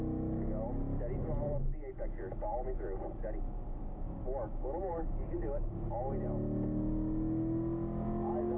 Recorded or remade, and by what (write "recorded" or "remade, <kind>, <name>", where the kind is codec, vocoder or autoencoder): recorded